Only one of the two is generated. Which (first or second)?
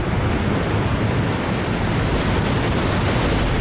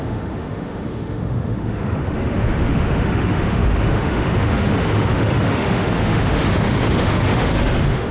second